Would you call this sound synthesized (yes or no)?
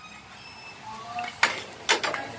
no